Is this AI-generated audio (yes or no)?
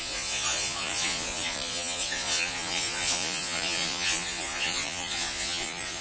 yes